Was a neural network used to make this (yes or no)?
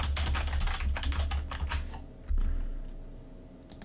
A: no